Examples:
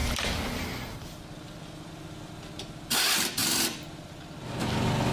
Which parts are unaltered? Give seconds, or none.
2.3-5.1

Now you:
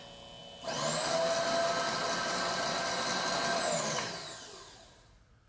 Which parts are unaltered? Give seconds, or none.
0.0-5.5

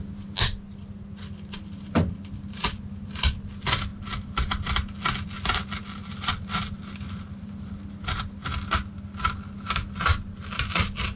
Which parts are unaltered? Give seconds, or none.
0.0-11.2

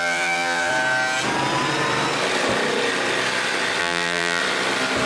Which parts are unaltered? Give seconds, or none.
0.7-3.8; 4.4-5.1

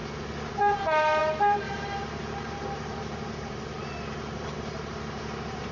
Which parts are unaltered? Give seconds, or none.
0.0-0.5